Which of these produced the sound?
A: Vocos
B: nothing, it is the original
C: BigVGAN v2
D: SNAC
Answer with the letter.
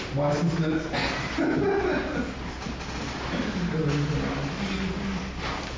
B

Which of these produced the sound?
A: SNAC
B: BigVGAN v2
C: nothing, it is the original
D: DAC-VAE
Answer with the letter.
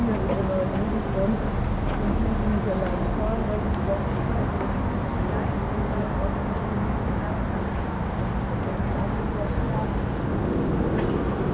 C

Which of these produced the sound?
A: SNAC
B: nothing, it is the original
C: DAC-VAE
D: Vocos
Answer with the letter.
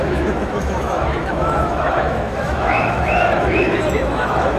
C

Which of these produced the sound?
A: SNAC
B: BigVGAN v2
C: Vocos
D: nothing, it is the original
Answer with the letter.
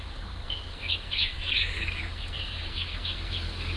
A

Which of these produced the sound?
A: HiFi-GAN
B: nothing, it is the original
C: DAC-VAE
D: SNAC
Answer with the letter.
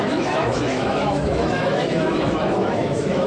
C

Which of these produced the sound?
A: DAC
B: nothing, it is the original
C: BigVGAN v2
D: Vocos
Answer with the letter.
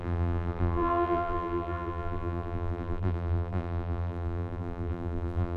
C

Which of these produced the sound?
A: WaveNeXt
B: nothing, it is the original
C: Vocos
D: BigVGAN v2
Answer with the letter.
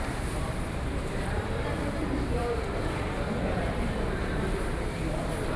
D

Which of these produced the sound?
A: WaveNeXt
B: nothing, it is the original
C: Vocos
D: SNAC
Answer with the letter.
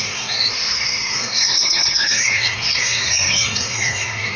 D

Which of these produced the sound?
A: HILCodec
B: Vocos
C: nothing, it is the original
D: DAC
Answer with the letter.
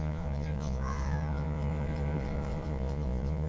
B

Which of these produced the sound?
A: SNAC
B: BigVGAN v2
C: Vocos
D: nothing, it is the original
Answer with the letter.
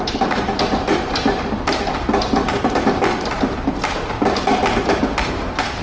D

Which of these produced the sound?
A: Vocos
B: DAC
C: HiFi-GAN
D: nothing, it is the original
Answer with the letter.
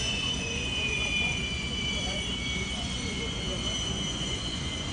A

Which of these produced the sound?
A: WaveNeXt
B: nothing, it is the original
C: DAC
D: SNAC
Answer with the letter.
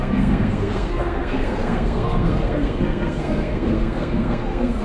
D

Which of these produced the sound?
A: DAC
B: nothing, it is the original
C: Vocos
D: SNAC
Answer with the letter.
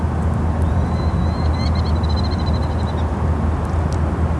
B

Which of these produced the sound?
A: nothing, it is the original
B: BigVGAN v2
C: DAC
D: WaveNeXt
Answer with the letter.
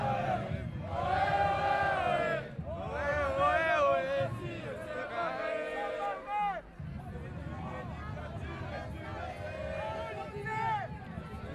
A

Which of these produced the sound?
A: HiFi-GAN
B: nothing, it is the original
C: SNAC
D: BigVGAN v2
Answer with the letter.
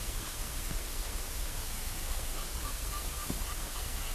C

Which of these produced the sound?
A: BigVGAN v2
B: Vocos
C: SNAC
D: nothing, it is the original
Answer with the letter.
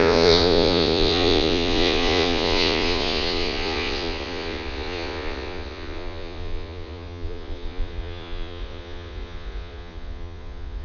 B